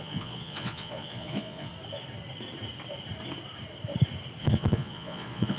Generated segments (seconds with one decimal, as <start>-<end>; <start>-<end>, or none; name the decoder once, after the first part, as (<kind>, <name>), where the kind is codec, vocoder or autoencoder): 0.0-1.7 (vocoder, Vocos); 4.4-5.6